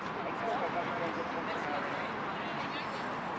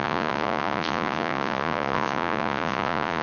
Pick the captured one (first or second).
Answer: first